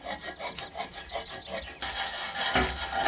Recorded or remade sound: recorded